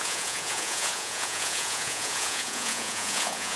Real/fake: fake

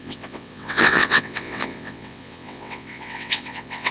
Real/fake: fake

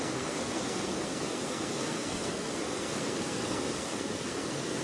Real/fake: fake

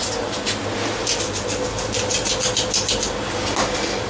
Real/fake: real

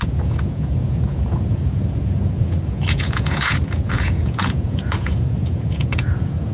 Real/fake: fake